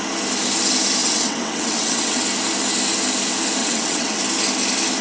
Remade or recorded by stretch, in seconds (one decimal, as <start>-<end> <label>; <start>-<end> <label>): 0.0-1.0 recorded; 1.0-2.2 remade; 2.2-3.6 recorded; 3.6-4.2 remade; 4.2-5.0 recorded